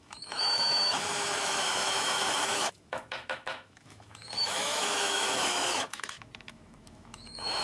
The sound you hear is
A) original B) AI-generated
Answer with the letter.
B